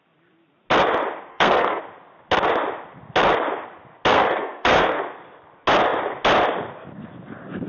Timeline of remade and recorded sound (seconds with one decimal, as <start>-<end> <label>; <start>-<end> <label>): 0.0-1.3 recorded; 1.3-1.8 remade; 1.8-4.1 recorded; 4.1-5.0 remade; 5.0-7.7 recorded